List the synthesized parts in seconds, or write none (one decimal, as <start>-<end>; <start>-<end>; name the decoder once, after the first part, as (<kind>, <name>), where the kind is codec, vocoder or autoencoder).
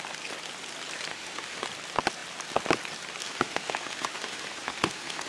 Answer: 1.1-1.6 (autoencoder, DAC-VAE); 3.2-5.3